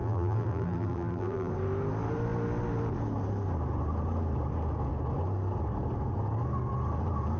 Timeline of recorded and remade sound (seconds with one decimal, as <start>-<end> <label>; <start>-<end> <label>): 0.0-1.5 remade; 1.5-7.4 recorded

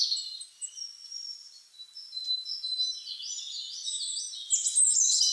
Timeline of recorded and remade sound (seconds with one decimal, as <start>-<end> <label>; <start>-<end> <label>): 0.0-5.3 recorded

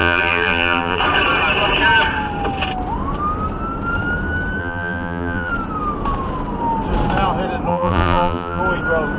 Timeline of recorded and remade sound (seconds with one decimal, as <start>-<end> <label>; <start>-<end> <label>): 0.0-1.0 remade; 1.0-4.6 recorded; 4.6-5.5 remade; 5.5-7.7 recorded; 7.7-8.6 remade; 8.6-9.2 recorded

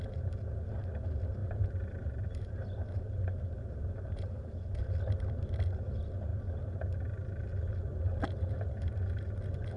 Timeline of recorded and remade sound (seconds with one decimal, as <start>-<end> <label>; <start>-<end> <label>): 0.0-1.4 recorded; 1.4-4.8 remade; 4.8-9.8 recorded

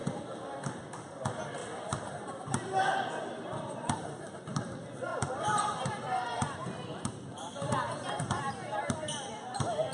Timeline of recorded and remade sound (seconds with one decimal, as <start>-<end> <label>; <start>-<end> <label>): 0.0-1.6 recorded; 1.6-2.2 remade; 2.2-5.1 recorded; 5.1-9.3 remade; 9.3-9.9 recorded

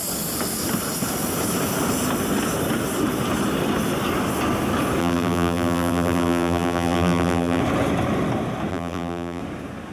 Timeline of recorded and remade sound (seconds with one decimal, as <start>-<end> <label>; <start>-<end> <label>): 0.0-5.0 recorded; 5.0-7.6 remade; 7.6-8.7 recorded; 8.7-9.4 remade; 9.4-9.9 recorded